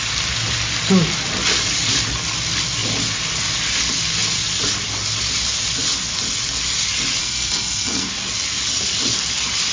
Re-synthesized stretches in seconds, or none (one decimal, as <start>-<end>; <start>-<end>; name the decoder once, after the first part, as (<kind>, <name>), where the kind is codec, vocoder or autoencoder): 7.2-8.1 (codec, SNAC)